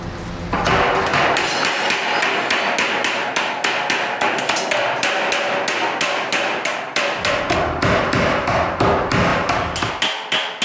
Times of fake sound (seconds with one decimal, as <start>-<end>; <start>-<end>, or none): none

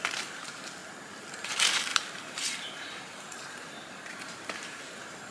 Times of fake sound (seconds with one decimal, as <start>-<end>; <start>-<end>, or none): 1.9-4.8

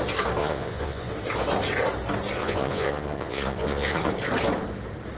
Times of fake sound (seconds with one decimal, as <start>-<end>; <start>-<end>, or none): 0.4-1.1; 2.4-4.1

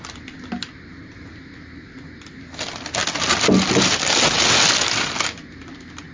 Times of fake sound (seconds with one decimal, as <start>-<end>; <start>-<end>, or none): none

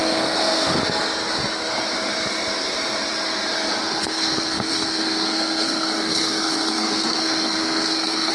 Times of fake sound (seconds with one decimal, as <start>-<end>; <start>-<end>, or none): 0.0-0.8; 3.8-8.3